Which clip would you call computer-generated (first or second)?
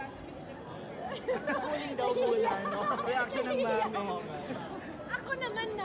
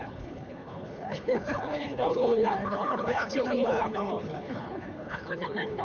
second